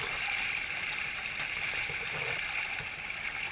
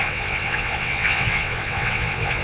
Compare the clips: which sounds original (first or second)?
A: first